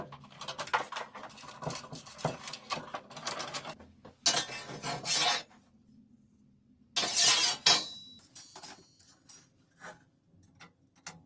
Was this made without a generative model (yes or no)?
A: yes